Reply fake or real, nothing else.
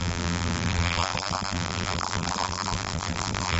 fake